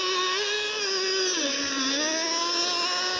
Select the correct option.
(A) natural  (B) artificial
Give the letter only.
A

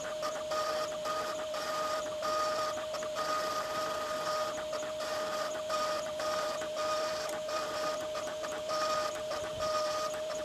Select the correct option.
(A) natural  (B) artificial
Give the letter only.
B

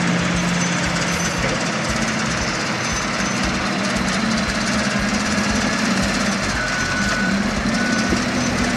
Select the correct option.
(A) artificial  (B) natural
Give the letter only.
B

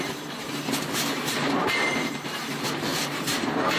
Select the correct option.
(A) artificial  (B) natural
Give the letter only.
A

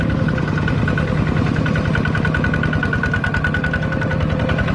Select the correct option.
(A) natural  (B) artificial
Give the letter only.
A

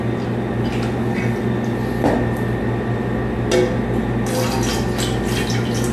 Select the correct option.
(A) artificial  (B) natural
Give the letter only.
B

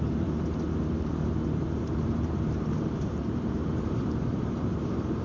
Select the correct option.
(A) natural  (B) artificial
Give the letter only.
B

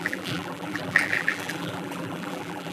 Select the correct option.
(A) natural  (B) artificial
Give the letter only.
B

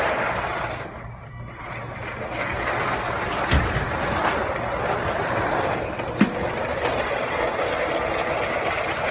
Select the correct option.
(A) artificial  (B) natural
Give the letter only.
B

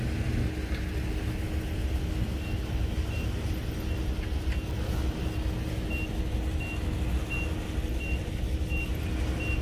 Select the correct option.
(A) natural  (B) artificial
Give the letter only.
A